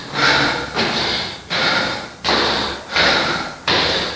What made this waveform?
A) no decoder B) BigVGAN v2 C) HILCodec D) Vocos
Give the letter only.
A